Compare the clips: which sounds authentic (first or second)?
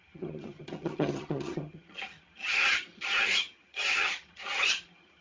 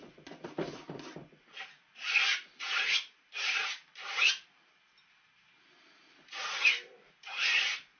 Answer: second